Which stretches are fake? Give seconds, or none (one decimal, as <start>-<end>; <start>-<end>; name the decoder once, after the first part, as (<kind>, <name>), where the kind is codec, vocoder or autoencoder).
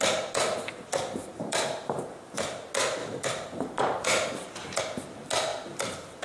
1.2-2.0 (vocoder, BigVGAN v2); 3.0-4.8